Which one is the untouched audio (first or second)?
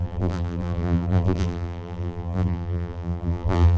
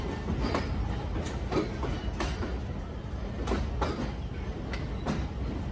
second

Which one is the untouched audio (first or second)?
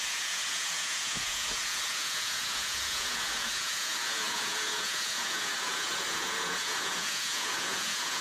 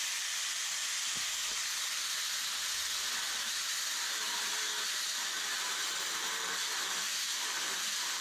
second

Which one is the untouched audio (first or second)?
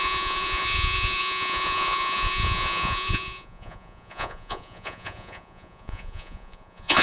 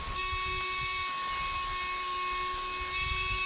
second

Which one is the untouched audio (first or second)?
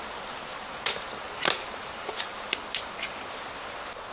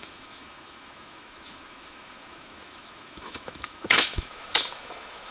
first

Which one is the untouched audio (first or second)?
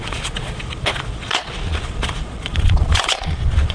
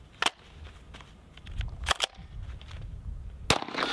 second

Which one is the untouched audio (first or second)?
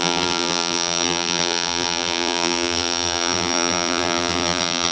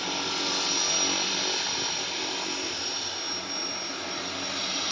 second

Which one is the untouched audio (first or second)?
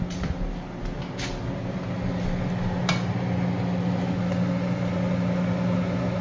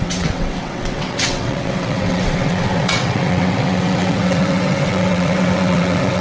first